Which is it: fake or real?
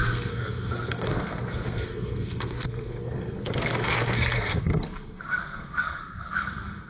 fake